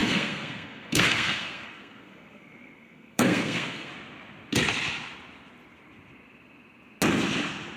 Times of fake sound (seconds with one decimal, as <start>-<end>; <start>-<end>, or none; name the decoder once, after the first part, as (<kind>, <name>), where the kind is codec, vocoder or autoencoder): 0.0-3.9 (codec, SNAC)